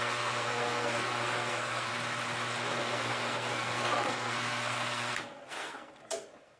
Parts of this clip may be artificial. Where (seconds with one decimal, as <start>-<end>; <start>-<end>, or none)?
0.0-1.9; 2.8-6.6